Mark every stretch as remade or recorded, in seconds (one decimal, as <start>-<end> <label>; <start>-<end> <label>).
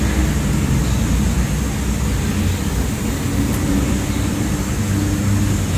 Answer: 0.0-5.8 recorded